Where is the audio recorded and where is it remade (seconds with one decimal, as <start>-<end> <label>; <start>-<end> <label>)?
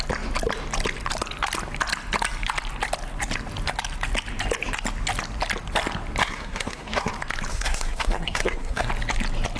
0.0-6.2 recorded; 6.2-7.1 remade; 7.1-7.5 recorded; 7.5-8.9 remade; 8.9-9.6 recorded